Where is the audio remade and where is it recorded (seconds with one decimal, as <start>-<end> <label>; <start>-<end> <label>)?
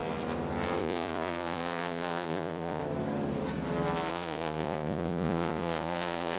0.0-0.8 recorded; 0.8-2.8 remade; 2.8-4.1 recorded; 4.1-6.4 remade